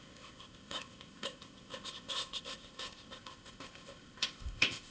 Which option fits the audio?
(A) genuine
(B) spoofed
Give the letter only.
B